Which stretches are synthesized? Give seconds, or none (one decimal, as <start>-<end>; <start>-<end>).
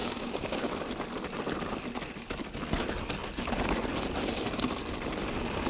0.0-0.7